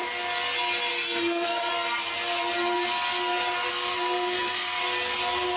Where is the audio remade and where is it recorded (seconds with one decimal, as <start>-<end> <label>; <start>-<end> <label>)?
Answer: 0.0-0.9 recorded; 0.9-1.7 remade; 1.7-3.7 recorded; 3.7-4.8 remade; 4.8-5.6 recorded